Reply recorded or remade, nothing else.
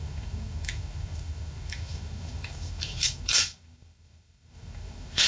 remade